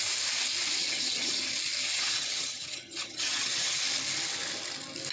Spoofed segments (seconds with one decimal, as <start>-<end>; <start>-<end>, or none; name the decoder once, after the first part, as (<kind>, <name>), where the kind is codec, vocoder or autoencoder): 0.8-1.4 (vocoder, HiFi-GAN); 1.9-3.8